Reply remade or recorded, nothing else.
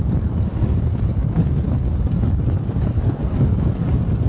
remade